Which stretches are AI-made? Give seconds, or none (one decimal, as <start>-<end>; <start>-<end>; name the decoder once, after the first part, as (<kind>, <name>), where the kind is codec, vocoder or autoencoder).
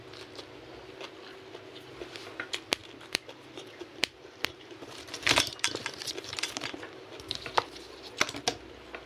2.8-8.1 (vocoder, BigVGAN v2)